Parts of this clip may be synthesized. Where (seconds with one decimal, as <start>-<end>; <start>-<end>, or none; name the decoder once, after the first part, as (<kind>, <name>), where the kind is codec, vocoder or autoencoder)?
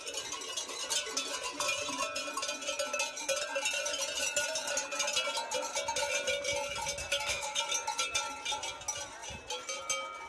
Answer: 7.0-7.6 (codec, SNAC)